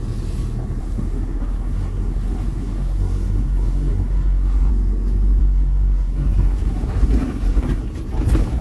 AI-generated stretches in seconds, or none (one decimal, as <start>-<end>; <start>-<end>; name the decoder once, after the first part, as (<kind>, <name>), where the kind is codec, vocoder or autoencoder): 0.8-4.7 (codec, SNAC); 5.4-7.8